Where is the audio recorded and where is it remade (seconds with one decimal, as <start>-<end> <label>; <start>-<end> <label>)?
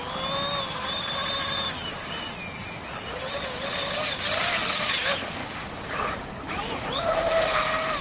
0.0-5.4 recorded; 5.4-7.1 remade; 7.1-8.0 recorded